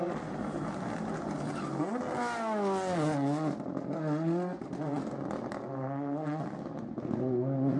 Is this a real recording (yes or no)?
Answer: yes